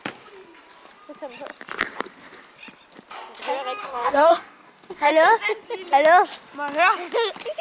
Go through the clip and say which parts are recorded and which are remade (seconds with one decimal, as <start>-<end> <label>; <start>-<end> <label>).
0.0-3.8 recorded; 3.8-5.1 remade; 5.1-7.6 recorded